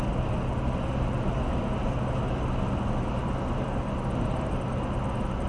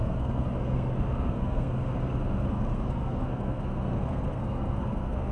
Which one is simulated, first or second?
second